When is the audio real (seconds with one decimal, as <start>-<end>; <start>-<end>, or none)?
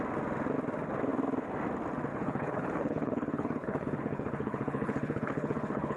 0.0-2.1